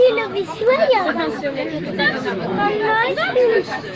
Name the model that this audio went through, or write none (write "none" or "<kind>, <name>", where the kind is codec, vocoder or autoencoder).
autoencoder, DAC-VAE